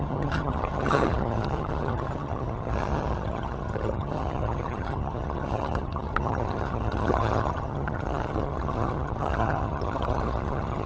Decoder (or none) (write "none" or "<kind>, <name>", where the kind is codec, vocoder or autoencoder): vocoder, HiFi-GAN